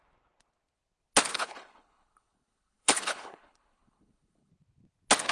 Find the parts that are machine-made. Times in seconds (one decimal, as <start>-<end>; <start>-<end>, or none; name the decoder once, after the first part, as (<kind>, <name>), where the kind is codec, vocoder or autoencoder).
1.3-4.5 (codec, HILCodec)